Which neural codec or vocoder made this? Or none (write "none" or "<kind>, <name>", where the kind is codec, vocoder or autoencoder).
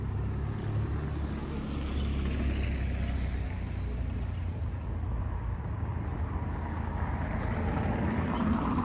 none